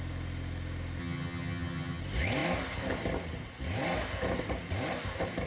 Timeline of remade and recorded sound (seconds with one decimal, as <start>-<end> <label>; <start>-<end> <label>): 0.0-1.0 recorded; 1.0-2.0 remade; 2.0-5.5 recorded